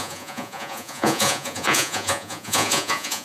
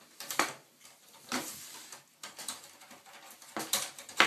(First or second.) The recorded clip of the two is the second